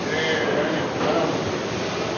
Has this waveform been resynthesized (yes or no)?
no